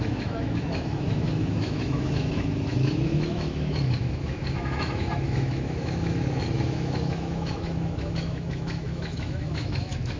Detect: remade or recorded remade